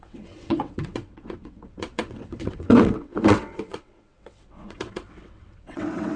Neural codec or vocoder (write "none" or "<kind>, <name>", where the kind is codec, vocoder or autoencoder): vocoder, WaveNeXt